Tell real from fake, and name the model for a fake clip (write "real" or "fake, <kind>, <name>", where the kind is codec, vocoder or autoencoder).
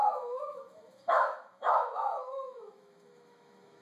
fake, autoencoder, DAC-VAE